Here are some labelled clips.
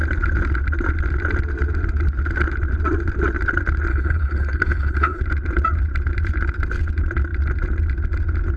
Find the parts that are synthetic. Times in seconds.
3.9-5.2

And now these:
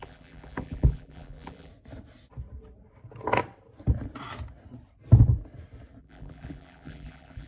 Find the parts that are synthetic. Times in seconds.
0.0-1.7; 6.0-7.5